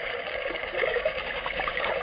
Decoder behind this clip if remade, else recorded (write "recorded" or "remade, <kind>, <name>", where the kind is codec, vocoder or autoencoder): remade, codec, DAC